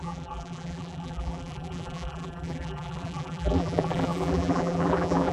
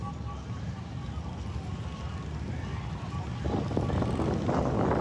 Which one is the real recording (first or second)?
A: second